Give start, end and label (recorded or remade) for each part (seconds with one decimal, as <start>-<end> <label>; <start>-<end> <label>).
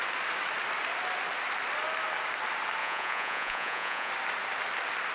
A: 0.0-2.8 recorded; 2.8-4.1 remade; 4.1-5.1 recorded